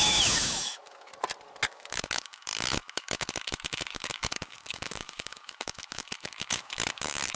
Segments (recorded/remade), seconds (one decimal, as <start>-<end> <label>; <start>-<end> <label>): 0.0-1.1 remade; 1.1-1.7 recorded; 1.7-7.4 remade